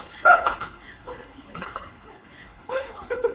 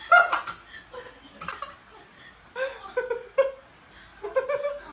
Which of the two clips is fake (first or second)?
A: first